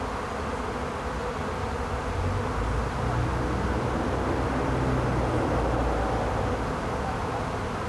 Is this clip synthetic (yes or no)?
no